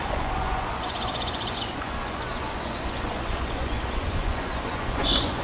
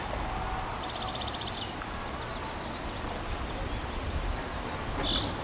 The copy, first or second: first